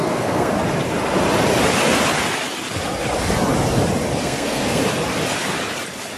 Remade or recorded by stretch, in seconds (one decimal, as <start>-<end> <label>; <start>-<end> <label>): 0.0-0.5 remade; 0.5-4.2 recorded; 4.2-4.8 remade; 4.8-6.2 recorded